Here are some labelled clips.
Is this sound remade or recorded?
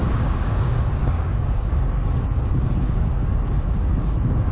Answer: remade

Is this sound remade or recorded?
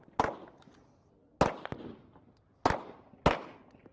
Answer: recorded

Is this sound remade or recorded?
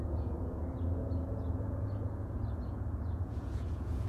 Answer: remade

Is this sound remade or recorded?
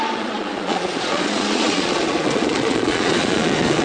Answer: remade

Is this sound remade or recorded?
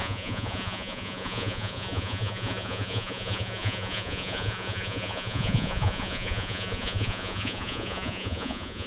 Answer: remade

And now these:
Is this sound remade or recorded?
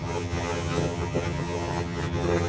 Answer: remade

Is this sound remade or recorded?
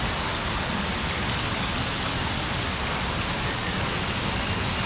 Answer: recorded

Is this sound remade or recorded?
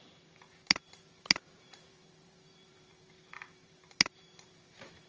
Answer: remade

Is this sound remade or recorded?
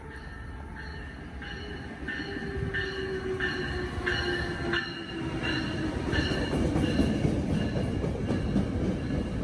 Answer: recorded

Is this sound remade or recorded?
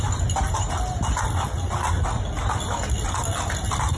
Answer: recorded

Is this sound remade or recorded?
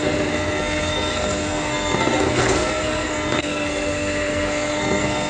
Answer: remade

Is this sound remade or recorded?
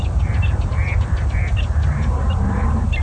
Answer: remade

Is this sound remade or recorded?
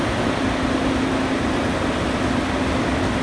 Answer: recorded